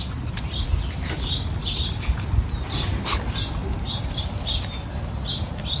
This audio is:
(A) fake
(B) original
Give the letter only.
B